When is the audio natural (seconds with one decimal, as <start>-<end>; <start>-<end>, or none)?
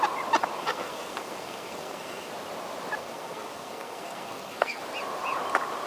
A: 0.0-0.6; 2.3-3.0; 4.8-5.9